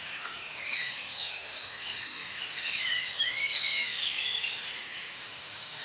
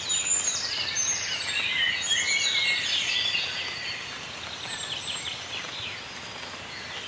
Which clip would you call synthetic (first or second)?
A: first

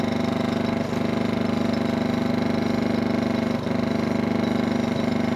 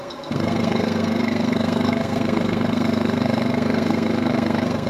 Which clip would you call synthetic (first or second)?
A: second